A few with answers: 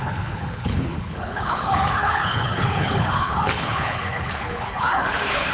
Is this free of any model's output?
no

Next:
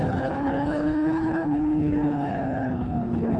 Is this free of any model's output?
no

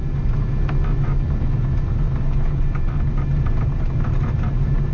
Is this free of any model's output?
yes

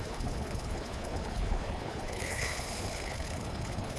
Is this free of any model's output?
no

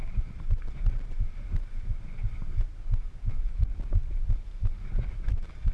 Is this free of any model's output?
yes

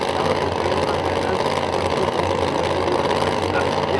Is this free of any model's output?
yes